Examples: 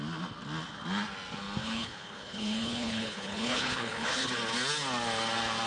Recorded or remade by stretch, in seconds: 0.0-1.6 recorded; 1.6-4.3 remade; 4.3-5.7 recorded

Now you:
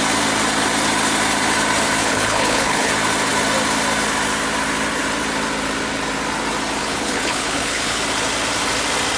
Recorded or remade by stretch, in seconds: 0.0-2.0 recorded; 2.0-2.9 remade; 2.9-6.8 recorded; 6.8-8.0 remade; 8.0-9.2 recorded